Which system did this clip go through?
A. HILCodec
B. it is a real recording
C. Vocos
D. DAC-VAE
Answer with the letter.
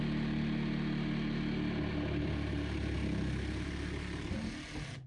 B